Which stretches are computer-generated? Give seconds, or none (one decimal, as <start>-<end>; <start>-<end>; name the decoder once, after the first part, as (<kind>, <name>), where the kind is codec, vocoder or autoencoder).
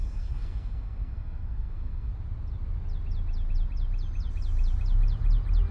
0.0-2.1 (codec, SNAC)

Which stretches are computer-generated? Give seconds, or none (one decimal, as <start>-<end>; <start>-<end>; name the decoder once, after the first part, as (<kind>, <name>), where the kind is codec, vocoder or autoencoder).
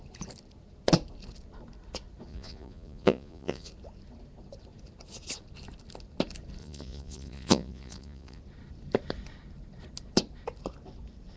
2.3-3.7 (vocoder, Vocos); 6.6-8.4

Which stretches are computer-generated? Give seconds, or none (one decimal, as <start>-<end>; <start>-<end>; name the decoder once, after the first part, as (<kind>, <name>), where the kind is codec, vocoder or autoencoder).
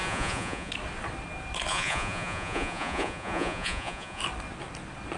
0.0-0.7 (vocoder, Vocos); 1.7-4.2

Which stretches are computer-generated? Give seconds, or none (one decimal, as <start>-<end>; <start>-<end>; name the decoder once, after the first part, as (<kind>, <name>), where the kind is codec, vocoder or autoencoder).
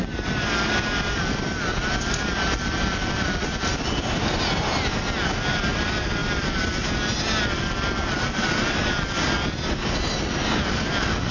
none